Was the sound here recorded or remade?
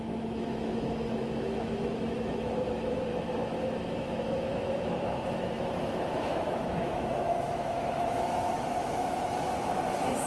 remade